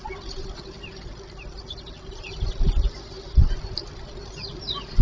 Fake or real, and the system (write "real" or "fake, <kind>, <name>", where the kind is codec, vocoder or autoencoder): real